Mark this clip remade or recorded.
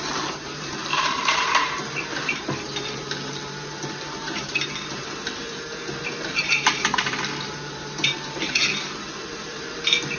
remade